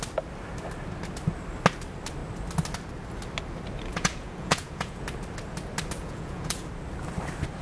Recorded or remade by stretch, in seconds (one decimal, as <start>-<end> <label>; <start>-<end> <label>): 0.0-3.9 recorded; 3.9-5.0 remade; 5.0-6.0 recorded; 6.0-6.7 remade; 6.7-7.6 recorded